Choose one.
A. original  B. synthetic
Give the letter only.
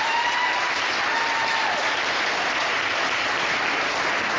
A